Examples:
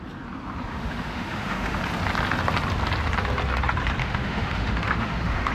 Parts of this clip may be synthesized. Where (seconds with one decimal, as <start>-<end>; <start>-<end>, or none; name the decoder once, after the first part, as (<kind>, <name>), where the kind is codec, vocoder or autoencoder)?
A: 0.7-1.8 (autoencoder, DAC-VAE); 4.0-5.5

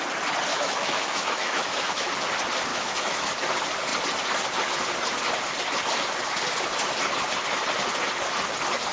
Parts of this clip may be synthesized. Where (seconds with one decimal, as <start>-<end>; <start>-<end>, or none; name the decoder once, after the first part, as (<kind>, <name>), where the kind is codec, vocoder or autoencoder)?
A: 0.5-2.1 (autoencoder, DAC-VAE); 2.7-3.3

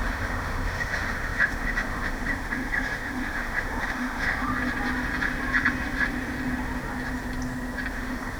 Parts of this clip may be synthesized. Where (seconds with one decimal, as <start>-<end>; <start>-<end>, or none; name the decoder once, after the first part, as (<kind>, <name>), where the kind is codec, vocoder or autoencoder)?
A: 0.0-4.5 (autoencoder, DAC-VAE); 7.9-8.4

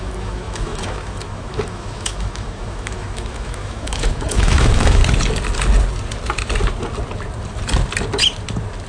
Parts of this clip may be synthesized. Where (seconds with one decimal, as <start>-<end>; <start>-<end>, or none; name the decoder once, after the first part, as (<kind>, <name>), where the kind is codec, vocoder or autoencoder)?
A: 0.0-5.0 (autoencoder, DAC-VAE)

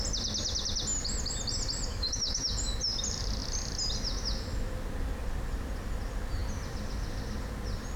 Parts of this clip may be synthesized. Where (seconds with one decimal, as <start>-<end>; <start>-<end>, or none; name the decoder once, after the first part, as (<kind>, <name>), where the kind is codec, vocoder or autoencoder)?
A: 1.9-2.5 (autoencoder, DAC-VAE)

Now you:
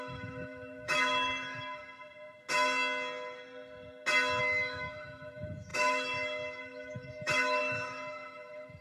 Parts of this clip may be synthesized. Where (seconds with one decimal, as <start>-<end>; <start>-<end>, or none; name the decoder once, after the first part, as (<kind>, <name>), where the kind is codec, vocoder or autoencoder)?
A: 0.0-1.8 (autoencoder, DAC-VAE); 4.4-8.8

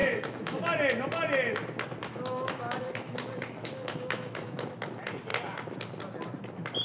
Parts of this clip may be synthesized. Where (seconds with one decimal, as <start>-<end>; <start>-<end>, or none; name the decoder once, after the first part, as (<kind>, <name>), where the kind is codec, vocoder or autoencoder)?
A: 0.0-0.6 (autoencoder, DAC-VAE); 2.0-4.7

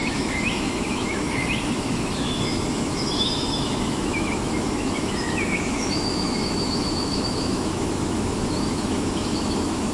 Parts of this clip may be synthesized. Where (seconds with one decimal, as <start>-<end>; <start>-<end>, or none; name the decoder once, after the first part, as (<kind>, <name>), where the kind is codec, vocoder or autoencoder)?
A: 0.0-9.9 (autoencoder, DAC-VAE)